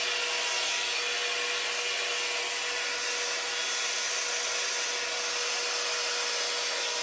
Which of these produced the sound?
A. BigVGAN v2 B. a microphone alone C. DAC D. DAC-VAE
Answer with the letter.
B